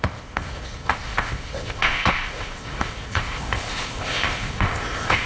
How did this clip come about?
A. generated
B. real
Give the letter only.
A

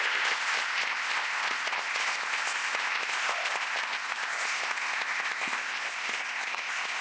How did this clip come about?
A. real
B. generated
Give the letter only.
B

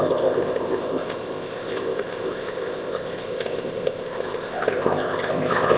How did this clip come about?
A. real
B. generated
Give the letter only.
B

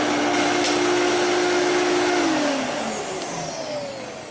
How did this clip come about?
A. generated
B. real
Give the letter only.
B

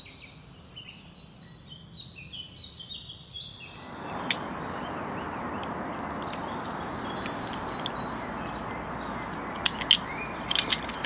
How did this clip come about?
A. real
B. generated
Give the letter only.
A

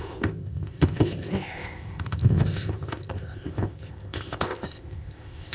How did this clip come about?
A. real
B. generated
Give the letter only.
B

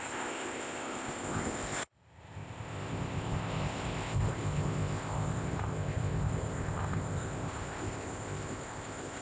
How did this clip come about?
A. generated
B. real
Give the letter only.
A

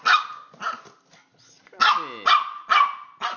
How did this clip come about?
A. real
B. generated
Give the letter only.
A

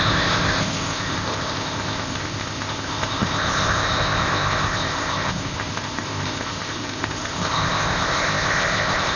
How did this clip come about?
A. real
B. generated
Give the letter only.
B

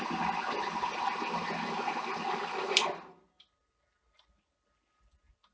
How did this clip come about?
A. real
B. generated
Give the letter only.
A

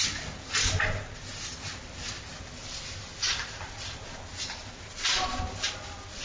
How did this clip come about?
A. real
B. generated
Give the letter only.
A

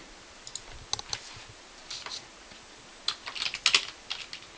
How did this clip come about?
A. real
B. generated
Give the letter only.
A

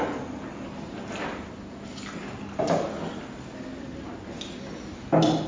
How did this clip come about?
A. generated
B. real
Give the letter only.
B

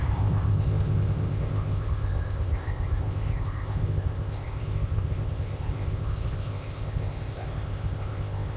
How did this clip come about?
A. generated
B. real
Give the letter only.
A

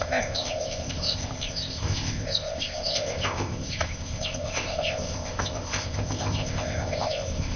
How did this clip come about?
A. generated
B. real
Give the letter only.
A